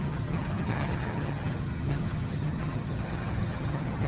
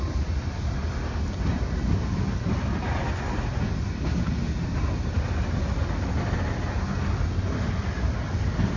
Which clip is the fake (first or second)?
first